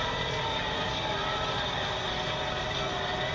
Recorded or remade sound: recorded